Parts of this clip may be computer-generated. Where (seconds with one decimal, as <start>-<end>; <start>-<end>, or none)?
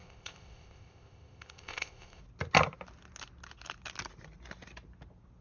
0.0-2.2